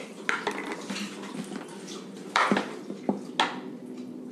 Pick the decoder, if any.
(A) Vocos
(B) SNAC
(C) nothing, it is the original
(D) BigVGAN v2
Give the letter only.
C